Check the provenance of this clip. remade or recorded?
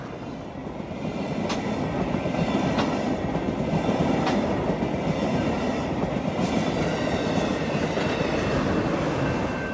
recorded